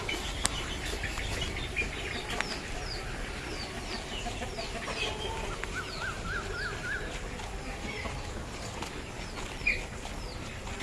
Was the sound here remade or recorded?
recorded